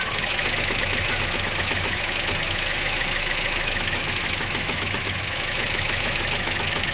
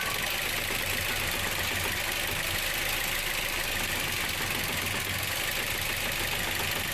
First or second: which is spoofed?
first